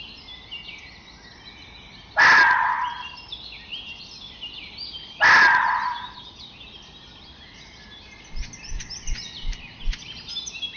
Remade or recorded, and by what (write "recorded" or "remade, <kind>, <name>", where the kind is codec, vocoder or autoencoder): recorded